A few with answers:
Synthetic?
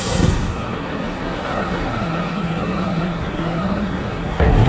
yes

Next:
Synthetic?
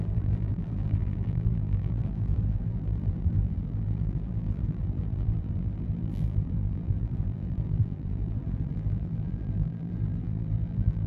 yes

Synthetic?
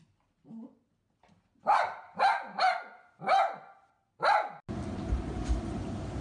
no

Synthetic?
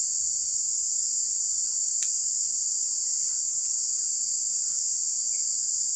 no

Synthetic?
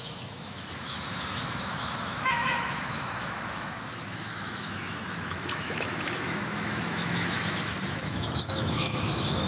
yes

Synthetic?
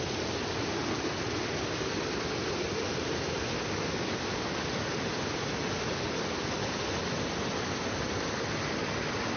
no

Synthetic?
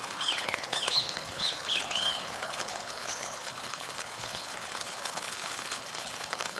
yes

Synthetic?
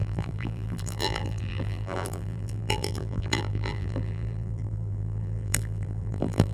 yes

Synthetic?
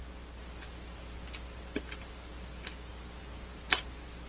no